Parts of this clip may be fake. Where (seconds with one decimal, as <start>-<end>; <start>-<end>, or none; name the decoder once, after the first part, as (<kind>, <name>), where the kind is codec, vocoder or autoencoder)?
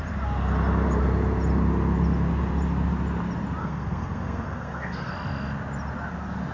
3.6-5.1 (codec, SNAC)